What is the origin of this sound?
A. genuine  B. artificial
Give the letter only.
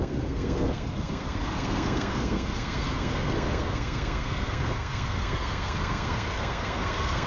B